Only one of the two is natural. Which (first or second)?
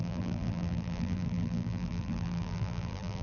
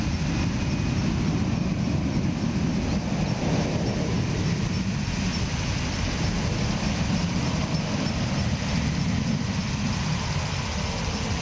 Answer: second